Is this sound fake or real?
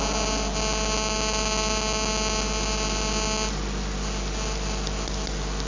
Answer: real